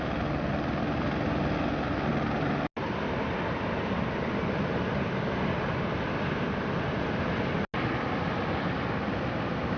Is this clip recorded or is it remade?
recorded